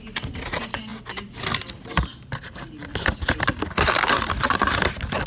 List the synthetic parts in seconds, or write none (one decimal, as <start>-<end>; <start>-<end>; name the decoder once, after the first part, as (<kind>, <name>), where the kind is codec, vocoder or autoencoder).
none